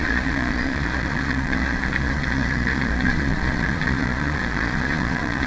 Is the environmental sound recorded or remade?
remade